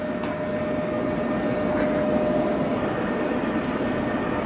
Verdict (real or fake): real